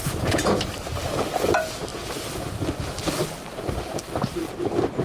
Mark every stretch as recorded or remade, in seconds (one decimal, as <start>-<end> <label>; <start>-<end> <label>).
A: 0.0-0.6 remade; 0.6-5.0 recorded